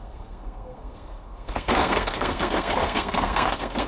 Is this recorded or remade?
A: remade